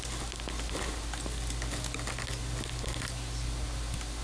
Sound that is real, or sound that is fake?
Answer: real